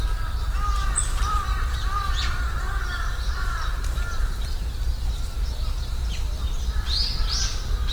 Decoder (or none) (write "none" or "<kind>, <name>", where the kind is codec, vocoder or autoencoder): none